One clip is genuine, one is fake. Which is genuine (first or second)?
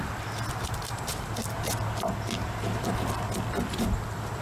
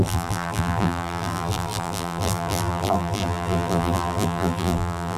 first